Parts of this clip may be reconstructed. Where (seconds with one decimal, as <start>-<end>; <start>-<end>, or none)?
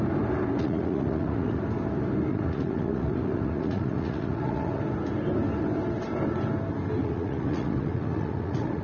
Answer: 0.6-1.6; 2.3-4.8; 7.0-8.8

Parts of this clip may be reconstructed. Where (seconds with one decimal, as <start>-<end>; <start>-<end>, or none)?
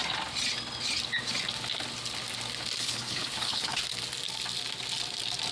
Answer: 2.8-3.8